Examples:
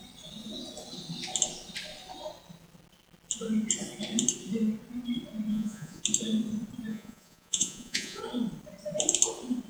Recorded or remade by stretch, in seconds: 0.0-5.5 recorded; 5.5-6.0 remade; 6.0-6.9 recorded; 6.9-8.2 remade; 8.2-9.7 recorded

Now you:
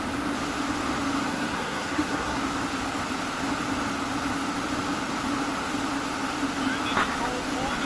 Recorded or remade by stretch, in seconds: 0.0-1.3 recorded; 1.3-2.4 remade; 2.4-7.9 recorded

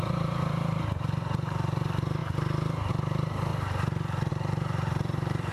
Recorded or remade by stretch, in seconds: 0.0-2.2 remade; 2.2-2.9 recorded; 2.9-3.5 remade; 3.5-4.3 recorded; 4.3-5.5 remade

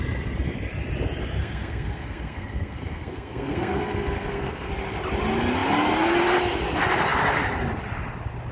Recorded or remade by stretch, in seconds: 0.0-1.4 recorded; 1.4-4.7 remade; 4.7-8.5 recorded

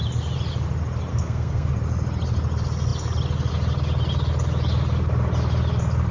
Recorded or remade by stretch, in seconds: 0.0-1.1 recorded; 1.1-1.7 remade; 1.7-6.1 recorded

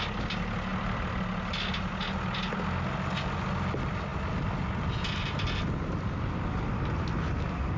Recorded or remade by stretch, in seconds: 0.0-7.8 recorded

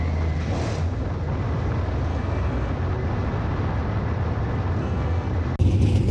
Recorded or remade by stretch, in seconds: 0.0-2.1 recorded; 2.1-2.7 remade; 2.7-4.8 recorded; 4.8-5.3 remade; 5.3-6.1 recorded